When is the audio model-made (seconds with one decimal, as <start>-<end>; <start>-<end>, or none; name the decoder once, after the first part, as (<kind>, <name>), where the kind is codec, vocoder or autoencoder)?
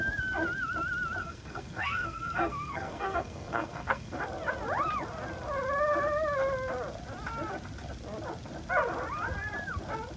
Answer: 1.2-4.2 (codec, SNAC)